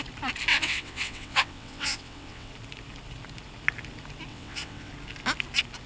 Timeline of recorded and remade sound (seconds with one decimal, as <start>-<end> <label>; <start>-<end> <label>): 0.0-0.5 recorded; 0.5-2.5 remade; 2.5-4.3 recorded; 4.3-4.9 remade; 4.9-5.9 recorded